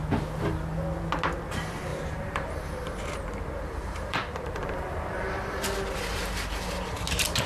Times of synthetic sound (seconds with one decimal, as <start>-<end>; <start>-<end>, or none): 1.9-5.4